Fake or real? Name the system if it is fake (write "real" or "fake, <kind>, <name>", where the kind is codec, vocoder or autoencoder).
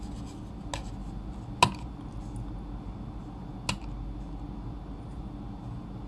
real